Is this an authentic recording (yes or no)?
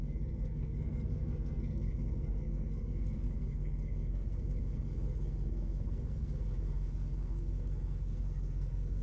no